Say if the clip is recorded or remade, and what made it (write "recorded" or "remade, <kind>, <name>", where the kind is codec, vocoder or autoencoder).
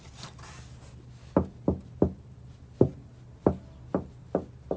recorded